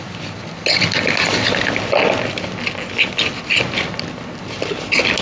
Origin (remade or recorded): recorded